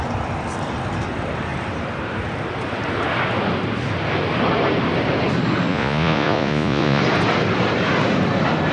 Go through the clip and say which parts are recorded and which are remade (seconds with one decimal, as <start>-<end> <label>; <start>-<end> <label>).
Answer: 0.0-5.7 recorded; 5.7-7.0 remade; 7.0-8.7 recorded